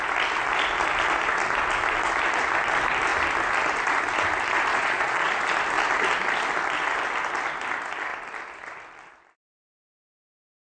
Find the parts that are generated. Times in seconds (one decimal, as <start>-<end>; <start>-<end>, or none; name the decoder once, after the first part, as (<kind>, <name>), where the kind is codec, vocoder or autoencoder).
4.7-5.4 (vocoder, Vocos)